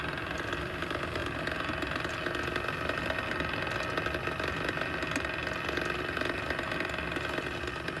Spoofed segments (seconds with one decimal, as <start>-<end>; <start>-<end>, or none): 0.0-1.2; 6.0-8.0